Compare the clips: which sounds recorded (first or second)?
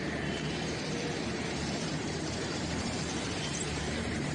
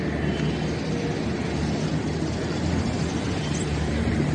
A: second